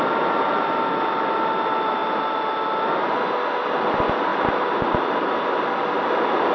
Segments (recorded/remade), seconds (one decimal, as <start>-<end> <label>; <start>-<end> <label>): 0.0-4.3 recorded; 4.3-5.6 remade; 5.6-6.5 recorded